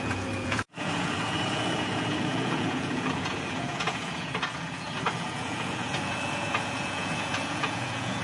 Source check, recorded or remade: remade